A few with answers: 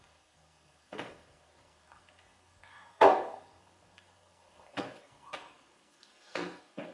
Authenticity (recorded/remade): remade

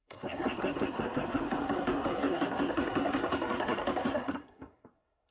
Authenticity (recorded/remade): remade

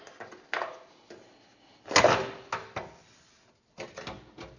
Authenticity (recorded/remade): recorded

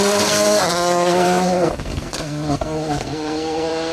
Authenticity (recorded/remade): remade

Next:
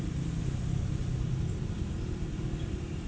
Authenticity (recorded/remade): recorded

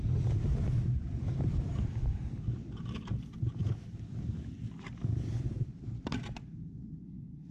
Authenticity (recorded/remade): recorded